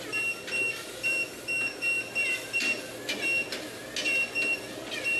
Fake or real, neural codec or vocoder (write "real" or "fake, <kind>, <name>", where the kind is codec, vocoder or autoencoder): real